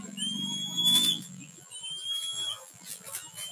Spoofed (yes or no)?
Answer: yes